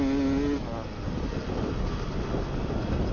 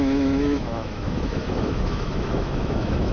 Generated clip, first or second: second